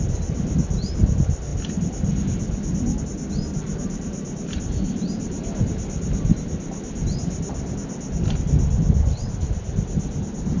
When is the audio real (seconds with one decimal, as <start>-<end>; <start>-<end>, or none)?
0.0-10.6